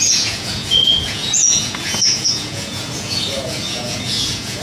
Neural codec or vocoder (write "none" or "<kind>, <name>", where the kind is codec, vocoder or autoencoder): vocoder, Vocos